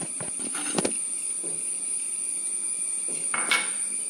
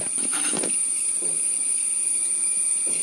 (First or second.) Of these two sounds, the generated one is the second